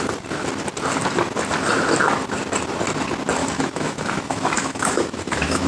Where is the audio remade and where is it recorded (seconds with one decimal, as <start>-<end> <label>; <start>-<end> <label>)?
0.0-3.4 recorded; 3.4-5.7 remade